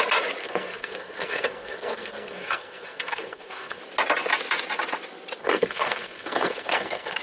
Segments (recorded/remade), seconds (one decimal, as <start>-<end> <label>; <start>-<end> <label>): 0.0-0.4 recorded; 0.4-3.8 remade; 3.8-5.4 recorded; 5.4-7.2 remade